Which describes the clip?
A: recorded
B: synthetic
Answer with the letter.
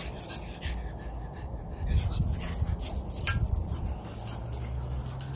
A